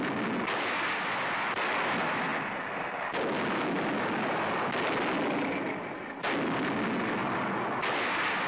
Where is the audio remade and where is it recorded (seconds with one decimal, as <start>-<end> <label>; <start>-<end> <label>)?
0.0-8.5 recorded